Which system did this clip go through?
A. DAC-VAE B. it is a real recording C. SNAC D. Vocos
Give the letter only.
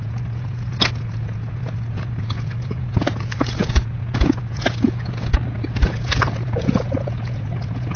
D